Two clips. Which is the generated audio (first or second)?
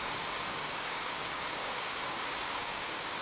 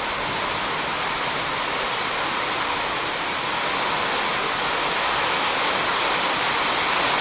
first